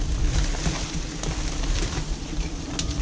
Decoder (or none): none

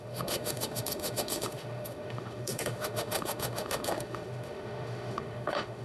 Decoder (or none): autoencoder, DAC-VAE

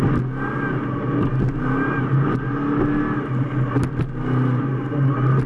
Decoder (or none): none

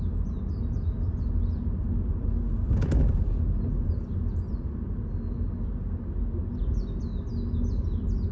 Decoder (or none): none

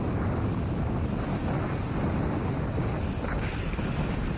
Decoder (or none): none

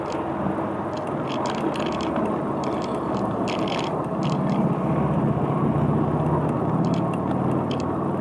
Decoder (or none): none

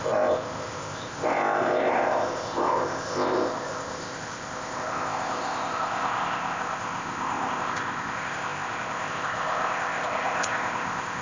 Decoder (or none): codec, ZipCodec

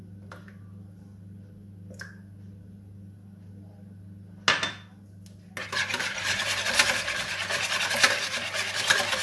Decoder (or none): none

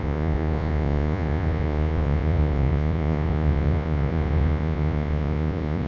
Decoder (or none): vocoder, Vocos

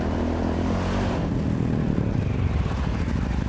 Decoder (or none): none